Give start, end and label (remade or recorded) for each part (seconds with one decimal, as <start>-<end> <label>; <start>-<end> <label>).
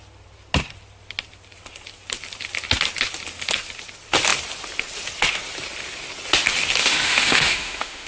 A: 0.0-6.8 recorded; 6.8-8.1 remade